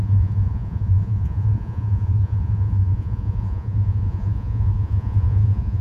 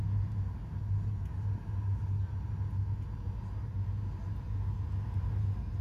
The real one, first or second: second